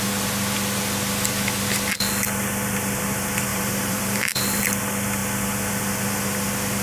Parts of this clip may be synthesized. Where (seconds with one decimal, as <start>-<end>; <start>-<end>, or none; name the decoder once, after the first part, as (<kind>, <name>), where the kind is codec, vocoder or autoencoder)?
3.5-4.6 (vocoder, BigVGAN v2)